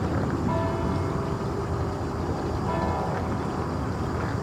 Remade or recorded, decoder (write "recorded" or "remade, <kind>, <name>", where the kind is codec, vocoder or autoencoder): recorded